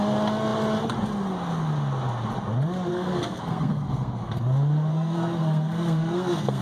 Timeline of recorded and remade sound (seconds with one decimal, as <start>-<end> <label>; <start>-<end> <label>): 0.0-2.9 recorded; 2.9-4.4 remade; 4.4-4.9 recorded; 4.9-6.6 remade